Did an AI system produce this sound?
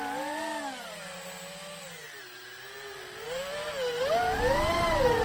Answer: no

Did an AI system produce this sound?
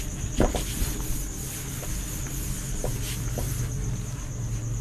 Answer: no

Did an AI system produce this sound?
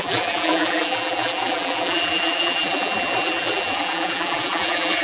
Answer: yes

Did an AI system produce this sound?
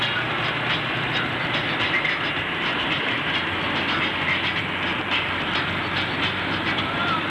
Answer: yes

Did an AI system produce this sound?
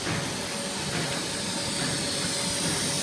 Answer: no